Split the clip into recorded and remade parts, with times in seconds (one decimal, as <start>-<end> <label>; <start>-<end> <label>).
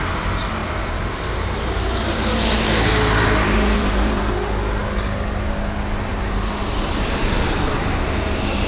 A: 0.0-0.6 recorded; 0.6-4.3 remade; 4.3-6.1 recorded; 6.1-6.6 remade; 6.6-8.7 recorded